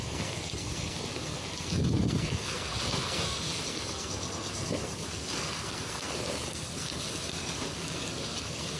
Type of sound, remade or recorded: remade